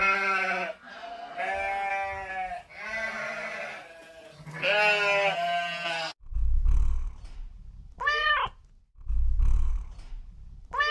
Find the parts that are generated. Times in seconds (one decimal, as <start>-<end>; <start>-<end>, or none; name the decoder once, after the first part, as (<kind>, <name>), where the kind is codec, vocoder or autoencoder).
none